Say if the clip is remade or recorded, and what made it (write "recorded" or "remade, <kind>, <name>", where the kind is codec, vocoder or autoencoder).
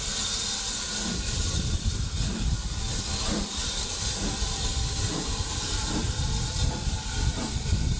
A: recorded